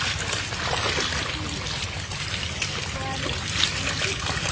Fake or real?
real